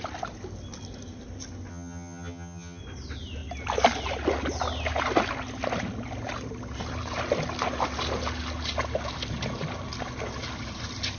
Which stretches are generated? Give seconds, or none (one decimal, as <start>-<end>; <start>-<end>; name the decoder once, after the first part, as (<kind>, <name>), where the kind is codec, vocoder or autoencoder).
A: 1.7-2.8 (vocoder, HiFi-GAN)